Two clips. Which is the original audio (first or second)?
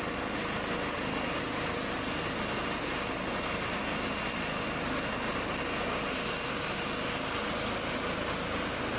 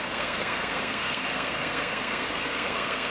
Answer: first